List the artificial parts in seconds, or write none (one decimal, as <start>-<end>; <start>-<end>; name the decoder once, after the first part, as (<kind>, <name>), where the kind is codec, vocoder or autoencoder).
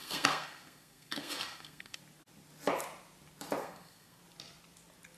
0.0-2.0 (codec, SNAC); 3.6-4.2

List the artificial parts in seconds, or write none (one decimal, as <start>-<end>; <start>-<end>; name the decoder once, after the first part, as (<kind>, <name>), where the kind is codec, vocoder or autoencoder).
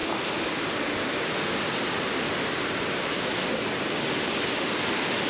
none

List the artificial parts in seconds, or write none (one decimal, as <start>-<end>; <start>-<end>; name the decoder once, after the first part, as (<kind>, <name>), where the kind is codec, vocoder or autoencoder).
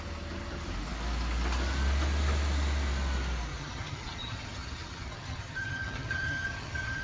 3.5-7.0 (vocoder, HiFi-GAN)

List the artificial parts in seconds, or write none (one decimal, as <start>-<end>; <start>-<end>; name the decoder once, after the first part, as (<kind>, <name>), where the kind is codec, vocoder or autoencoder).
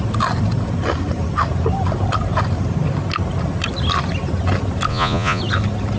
4.9-5.4 (vocoder, Vocos)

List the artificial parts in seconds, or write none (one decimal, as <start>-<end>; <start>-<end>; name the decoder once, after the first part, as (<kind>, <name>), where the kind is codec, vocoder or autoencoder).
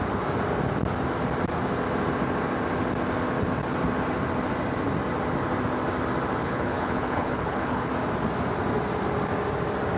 6.4-7.9 (codec, HILCodec)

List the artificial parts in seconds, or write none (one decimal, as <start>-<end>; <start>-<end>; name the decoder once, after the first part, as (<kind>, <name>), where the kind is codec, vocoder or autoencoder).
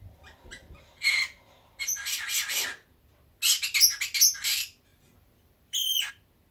4.9-6.1 (vocoder, BigVGAN v2)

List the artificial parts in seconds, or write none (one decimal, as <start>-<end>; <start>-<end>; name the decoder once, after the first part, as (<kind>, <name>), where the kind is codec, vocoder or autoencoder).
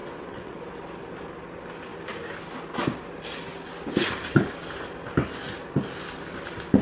0.0-0.6 (vocoder, WaveNeXt)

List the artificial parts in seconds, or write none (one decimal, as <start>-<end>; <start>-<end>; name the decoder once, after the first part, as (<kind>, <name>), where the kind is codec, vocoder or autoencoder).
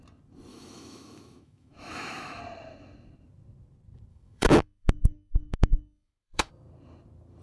0.5-2.4 (autoencoder, DAC-VAE); 4.1-6.5